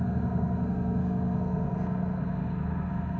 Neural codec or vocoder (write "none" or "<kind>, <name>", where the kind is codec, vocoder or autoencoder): codec, SNAC